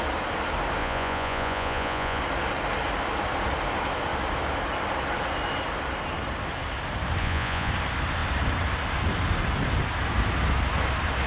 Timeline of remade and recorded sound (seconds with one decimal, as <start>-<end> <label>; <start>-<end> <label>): 0.0-0.8 recorded; 0.8-2.2 remade; 2.2-7.2 recorded; 7.2-7.7 remade; 7.7-11.3 recorded